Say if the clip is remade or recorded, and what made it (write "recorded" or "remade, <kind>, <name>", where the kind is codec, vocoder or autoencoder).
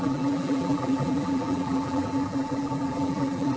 remade, vocoder, BigVGAN v2